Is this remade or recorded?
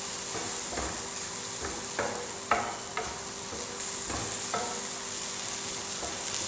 recorded